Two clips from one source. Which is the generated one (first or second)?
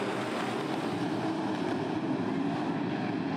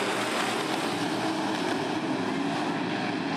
first